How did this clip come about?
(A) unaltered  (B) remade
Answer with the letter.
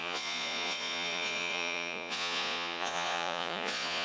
B